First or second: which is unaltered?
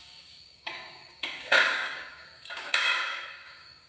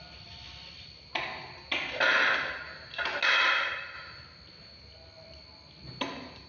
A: second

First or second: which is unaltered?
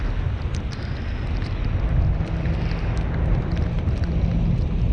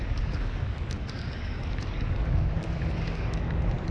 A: first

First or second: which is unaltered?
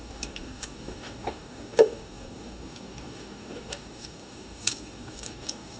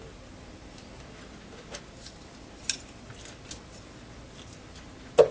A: second